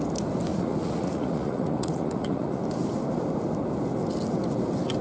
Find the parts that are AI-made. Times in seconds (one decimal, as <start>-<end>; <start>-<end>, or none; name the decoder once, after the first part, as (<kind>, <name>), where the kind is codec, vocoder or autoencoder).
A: 0.5-2.6 (vocoder, Vocos)